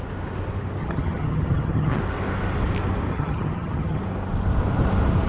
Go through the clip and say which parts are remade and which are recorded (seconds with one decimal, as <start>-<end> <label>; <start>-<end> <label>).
0.0-0.8 recorded; 0.8-2.0 remade; 2.0-3.1 recorded; 3.1-4.0 remade; 4.0-5.3 recorded